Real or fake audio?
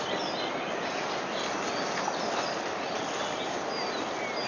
real